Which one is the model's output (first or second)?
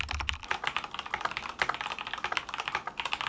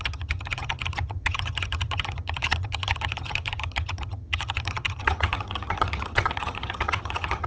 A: second